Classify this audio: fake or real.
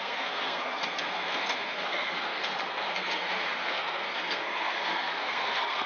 fake